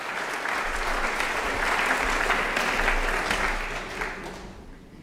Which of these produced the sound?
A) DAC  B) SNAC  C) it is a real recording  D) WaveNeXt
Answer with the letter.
C